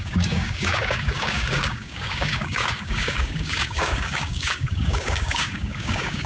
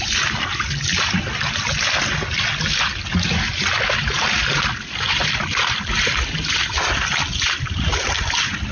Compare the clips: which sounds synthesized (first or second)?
first